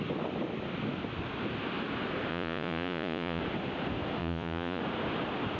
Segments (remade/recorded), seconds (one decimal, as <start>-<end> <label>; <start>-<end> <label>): 0.0-2.3 recorded; 2.3-3.4 remade; 3.4-4.2 recorded; 4.2-4.8 remade; 4.8-5.6 recorded